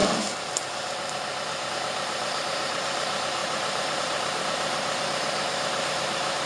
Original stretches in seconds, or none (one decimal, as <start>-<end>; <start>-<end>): 0.0-1.7